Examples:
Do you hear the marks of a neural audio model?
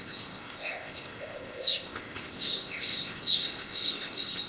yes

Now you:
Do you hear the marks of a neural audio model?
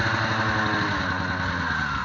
no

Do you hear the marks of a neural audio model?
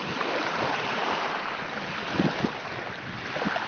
no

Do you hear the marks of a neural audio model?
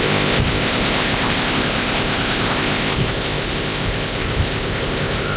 yes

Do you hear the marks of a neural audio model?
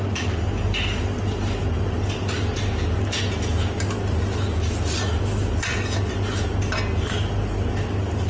no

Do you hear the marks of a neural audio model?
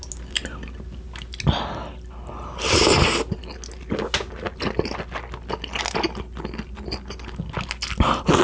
no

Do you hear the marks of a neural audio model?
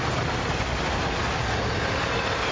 no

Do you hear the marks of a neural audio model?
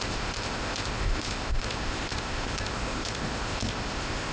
yes